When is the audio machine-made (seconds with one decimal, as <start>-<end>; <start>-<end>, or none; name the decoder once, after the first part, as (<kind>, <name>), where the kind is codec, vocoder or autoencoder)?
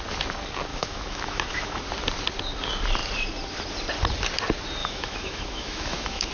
0.7-1.8 (autoencoder, DAC-VAE); 4.8-6.3